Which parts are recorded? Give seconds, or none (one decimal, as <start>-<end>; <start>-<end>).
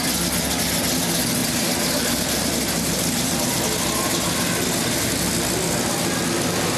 0.0-1.4; 3.6-6.8